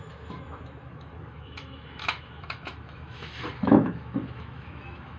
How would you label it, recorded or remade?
remade